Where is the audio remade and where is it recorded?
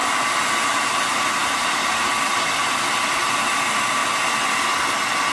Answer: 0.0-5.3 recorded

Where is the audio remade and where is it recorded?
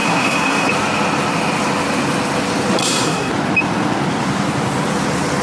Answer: 0.0-0.7 remade; 0.7-2.8 recorded; 2.8-3.3 remade; 3.3-5.4 recorded